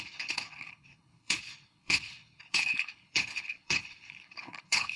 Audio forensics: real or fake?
fake